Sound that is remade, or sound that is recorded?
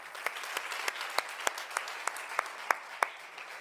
recorded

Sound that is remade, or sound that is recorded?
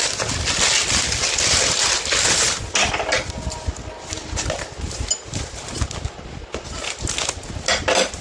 recorded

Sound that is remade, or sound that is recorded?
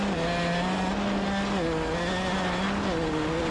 recorded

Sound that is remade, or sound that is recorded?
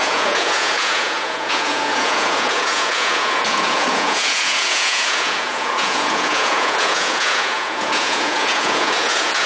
remade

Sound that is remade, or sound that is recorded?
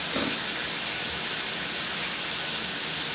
recorded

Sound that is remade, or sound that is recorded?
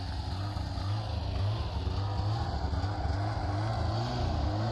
recorded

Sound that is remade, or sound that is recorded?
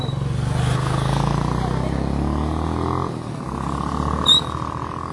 recorded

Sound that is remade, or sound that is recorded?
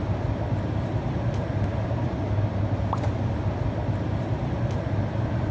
recorded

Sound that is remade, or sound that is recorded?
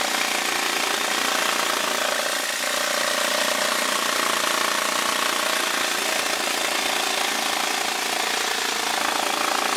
recorded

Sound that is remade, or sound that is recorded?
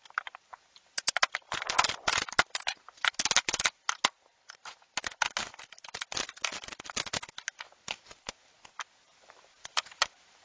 recorded